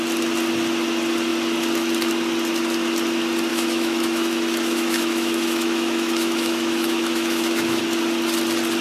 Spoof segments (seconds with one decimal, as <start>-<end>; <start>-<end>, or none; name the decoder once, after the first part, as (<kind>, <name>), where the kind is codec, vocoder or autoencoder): 3.5-7.8 (autoencoder, DAC-VAE)